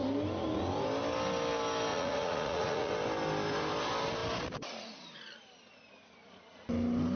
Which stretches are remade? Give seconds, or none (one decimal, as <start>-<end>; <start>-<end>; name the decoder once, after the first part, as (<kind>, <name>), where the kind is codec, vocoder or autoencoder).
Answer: 1.9-2.9 (vocoder, Vocos)